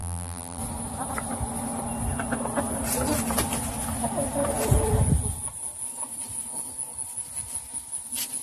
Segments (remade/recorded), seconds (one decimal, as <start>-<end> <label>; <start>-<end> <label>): 0.0-0.6 remade; 0.6-8.4 recorded